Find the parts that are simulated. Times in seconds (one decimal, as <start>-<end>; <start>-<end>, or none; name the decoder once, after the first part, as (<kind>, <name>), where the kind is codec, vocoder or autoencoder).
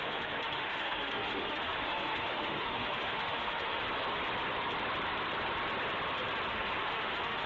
0.0-3.8 (autoencoder, DAC-VAE); 6.5-7.5